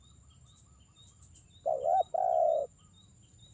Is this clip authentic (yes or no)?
yes